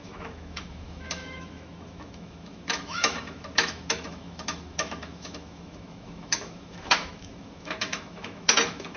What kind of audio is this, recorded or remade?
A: remade